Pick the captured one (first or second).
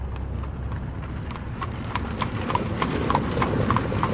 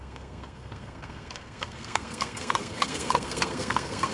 first